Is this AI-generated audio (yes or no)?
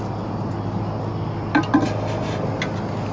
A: no